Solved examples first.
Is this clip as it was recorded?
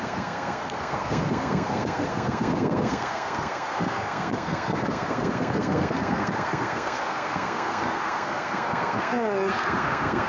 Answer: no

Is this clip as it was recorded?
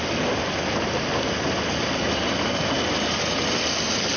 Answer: yes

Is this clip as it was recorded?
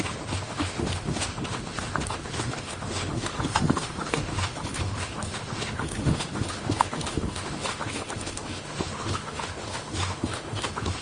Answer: no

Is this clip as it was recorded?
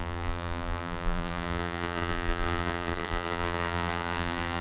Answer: no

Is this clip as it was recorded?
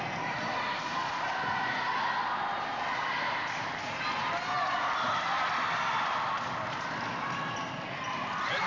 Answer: yes